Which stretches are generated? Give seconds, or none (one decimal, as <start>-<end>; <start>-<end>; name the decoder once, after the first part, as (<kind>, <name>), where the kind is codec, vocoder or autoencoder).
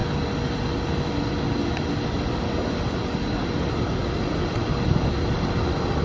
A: none